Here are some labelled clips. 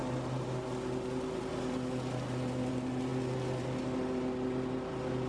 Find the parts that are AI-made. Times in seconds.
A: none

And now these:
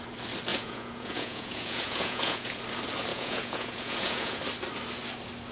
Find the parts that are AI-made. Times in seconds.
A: 0.5-2.6 (vocoder, Vocos); 3.1-4.4

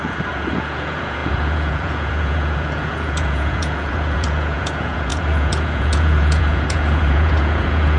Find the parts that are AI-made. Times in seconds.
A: 0.0-8.0 (vocoder, Vocos)

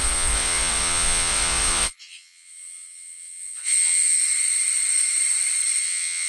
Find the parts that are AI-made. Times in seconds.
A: 0.0-4.2 (vocoder, Vocos); 5.8-6.3

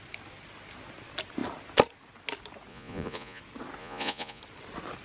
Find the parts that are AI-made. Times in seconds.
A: 2.7-3.4 (vocoder, Vocos); 3.8-4.4

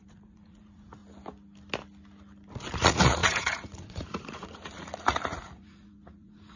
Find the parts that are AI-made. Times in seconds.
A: 0.0-1.0 (vocoder, Vocos); 2.7-6.6

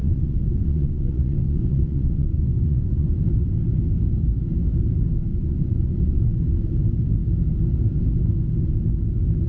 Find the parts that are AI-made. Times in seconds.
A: 0.0-3.2 (vocoder, Vocos); 5.3-6.2